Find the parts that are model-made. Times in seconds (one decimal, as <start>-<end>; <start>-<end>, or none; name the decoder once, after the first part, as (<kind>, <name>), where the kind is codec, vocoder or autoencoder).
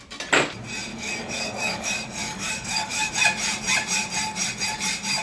0.9-3.1 (codec, DAC)